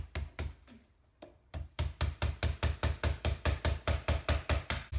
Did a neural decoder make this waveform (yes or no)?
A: no